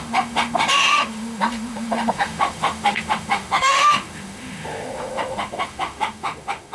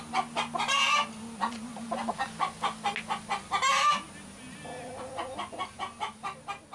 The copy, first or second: first